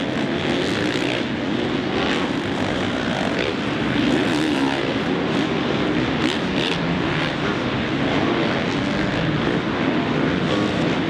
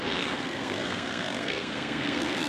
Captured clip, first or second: first